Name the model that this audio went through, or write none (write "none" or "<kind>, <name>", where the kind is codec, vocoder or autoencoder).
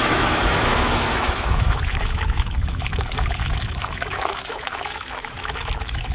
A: autoencoder, DAC-VAE